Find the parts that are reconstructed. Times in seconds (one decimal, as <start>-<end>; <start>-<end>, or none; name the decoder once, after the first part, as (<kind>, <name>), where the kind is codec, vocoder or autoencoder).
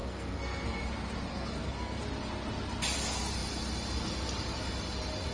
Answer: 0.0-0.8 (codec, SNAC); 1.3-2.0